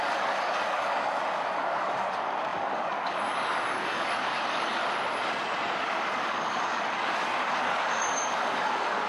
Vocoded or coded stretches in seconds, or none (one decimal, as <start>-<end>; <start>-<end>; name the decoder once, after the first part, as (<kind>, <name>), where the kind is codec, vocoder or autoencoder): 0.0-4.8 (codec, DAC); 5.8-9.1